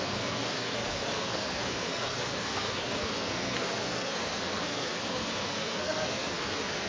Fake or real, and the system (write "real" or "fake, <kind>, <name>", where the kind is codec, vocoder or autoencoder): fake, codec, SNAC